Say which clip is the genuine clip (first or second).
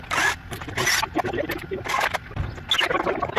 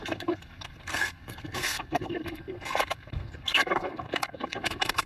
first